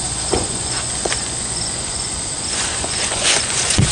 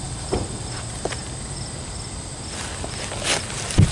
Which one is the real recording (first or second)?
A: second